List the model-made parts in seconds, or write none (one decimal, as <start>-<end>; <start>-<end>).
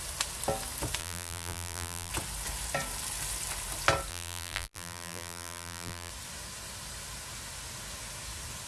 1.0-2.1; 4.1-6.1